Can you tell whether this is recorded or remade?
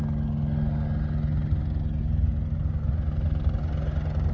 recorded